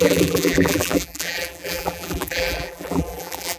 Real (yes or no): no